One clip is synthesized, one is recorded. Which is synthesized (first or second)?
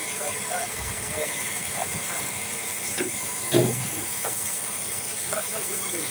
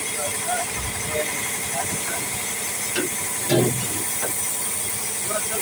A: first